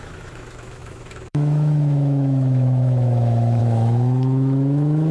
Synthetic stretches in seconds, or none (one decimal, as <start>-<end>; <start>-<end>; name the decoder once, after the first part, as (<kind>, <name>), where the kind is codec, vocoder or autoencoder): 0.0-5.1 (autoencoder, DAC-VAE)